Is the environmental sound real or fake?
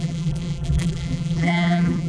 fake